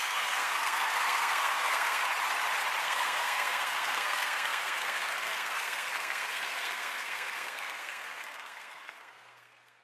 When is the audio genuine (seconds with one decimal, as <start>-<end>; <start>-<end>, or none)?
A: 2.0-2.8